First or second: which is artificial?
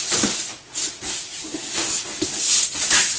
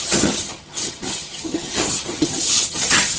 second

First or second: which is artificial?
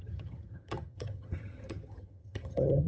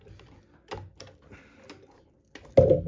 first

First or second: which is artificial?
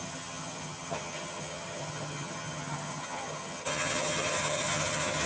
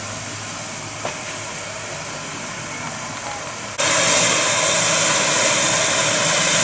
first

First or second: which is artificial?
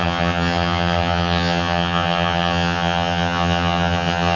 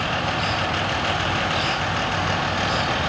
first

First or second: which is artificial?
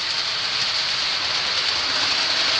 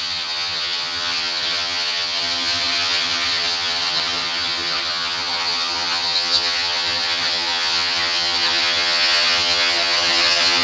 second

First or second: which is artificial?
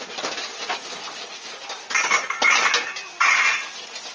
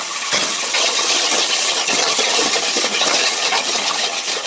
second